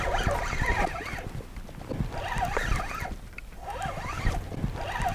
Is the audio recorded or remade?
remade